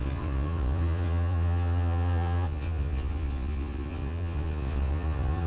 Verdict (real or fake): fake